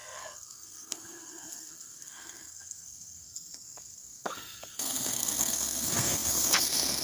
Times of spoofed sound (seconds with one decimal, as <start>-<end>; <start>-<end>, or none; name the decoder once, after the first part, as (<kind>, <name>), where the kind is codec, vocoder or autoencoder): 0.0-7.0 (codec, SNAC)